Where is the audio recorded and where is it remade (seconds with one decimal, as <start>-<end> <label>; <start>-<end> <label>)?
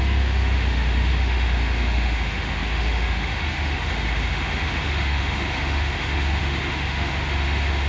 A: 0.0-7.9 remade